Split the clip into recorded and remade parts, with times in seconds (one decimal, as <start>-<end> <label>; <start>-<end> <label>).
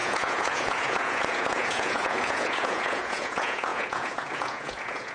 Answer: 0.0-5.1 remade